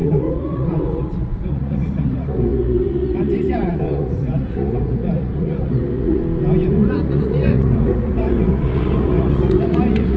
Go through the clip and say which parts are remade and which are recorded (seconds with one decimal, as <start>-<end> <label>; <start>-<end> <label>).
0.0-6.2 remade; 6.2-6.7 recorded; 6.7-10.2 remade